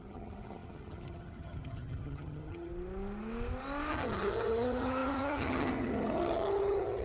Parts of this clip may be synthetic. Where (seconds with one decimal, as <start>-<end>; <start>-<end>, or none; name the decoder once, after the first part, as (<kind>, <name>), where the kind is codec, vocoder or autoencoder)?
0.0-2.7 (vocoder, HiFi-GAN); 3.9-7.0